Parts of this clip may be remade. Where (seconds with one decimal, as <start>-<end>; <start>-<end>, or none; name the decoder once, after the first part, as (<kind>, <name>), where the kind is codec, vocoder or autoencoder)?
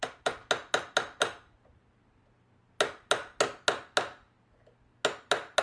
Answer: none